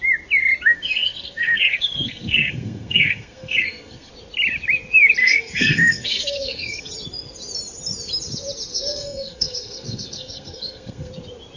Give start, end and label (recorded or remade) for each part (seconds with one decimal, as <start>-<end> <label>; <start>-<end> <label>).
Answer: 0.0-0.7 recorded; 0.7-4.1 remade; 4.1-5.2 recorded; 5.2-6.9 remade; 6.9-8.7 recorded; 8.7-11.1 remade; 11.1-11.6 recorded

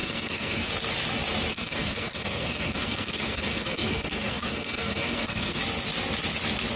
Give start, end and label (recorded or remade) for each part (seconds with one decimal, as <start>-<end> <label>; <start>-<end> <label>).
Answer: 0.0-0.7 remade; 0.7-1.5 recorded; 1.5-5.6 remade; 5.6-6.8 recorded

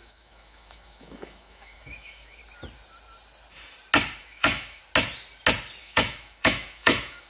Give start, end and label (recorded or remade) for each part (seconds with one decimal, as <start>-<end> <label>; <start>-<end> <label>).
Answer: 0.0-2.4 remade; 2.4-4.2 recorded; 4.2-4.8 remade; 4.8-5.8 recorded; 5.8-7.3 remade